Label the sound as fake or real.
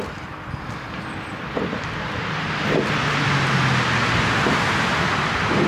real